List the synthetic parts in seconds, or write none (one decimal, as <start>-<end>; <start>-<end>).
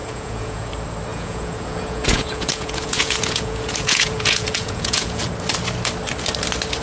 0.0-0.7; 1.1-5.2